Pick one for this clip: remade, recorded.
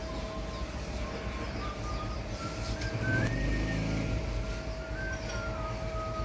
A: recorded